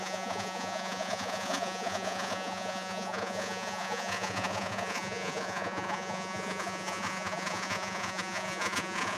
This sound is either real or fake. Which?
fake